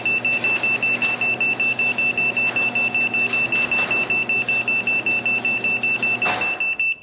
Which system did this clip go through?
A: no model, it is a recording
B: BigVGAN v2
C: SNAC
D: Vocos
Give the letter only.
A